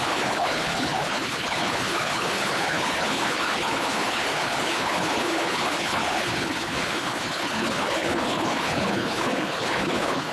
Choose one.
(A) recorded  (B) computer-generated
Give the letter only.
B